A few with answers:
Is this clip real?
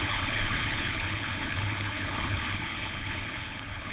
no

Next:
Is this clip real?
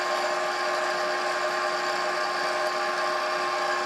yes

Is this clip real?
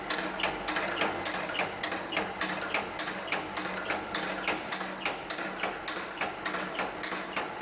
yes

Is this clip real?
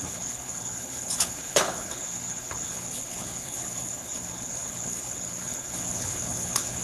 no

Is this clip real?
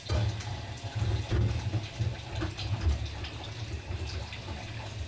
yes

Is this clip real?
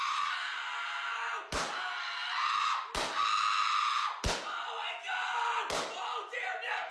yes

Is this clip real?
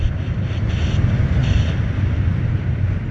yes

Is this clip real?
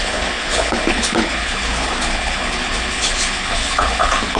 no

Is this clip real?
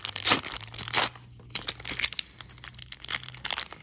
yes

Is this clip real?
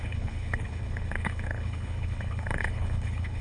no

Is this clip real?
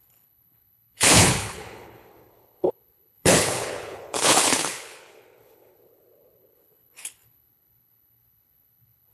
no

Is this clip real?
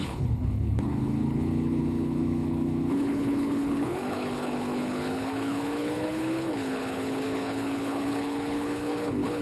no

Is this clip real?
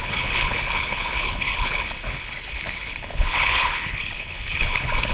no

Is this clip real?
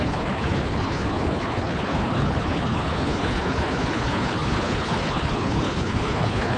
no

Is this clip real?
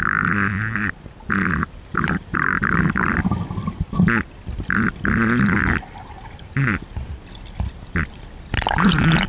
yes